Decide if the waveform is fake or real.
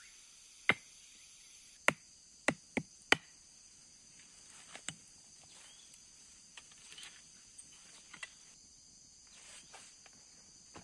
real